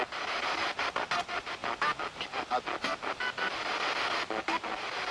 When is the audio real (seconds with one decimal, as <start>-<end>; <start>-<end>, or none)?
0.0-5.1